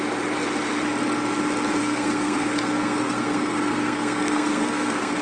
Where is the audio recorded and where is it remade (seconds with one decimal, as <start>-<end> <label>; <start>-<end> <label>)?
0.0-1.8 recorded; 1.8-5.2 remade